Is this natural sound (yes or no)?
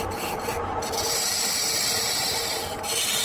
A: yes